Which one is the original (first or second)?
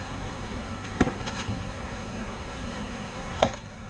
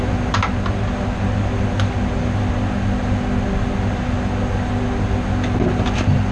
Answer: second